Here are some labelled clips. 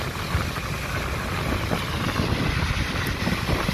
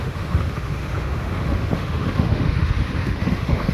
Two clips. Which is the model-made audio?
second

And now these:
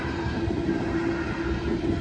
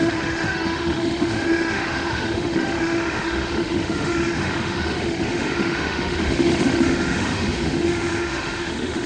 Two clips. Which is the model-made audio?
second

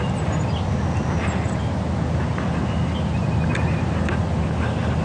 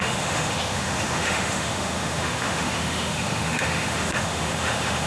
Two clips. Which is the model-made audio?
second